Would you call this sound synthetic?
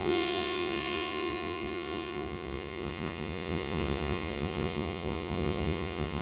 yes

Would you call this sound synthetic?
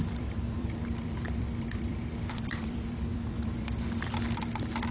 yes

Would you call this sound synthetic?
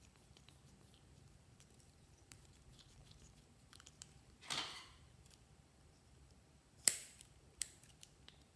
yes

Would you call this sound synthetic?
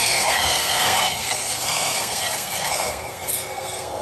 yes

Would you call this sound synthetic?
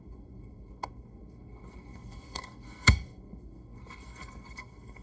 yes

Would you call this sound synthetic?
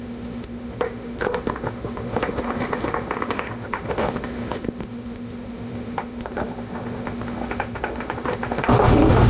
yes